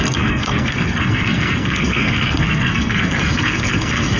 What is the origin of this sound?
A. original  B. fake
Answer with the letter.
B